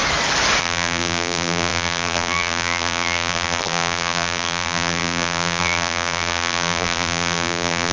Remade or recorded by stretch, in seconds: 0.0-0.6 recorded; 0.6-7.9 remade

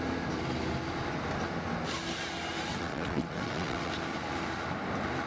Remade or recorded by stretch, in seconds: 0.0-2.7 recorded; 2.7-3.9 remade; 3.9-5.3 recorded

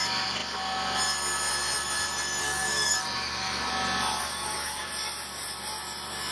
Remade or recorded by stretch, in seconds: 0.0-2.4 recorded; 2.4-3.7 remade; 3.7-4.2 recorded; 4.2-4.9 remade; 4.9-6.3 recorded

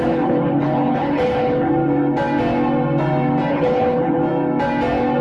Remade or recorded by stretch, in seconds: 0.0-1.7 remade; 1.7-3.5 recorded; 3.5-4.2 remade; 4.2-5.2 recorded

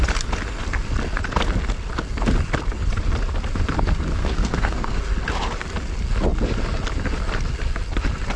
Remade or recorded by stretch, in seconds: 0.0-4.2 recorded; 4.2-5.0 remade; 5.0-8.4 recorded

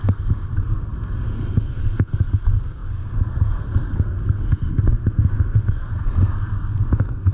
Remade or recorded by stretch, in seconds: 0.0-7.3 remade